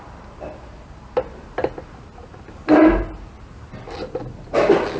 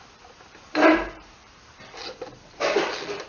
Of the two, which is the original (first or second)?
first